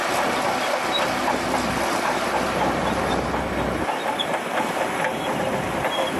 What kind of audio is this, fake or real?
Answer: real